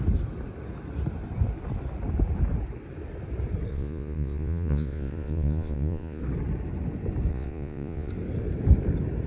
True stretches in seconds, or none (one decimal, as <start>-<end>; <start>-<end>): 0.0-3.7; 6.2-7.3; 8.1-9.3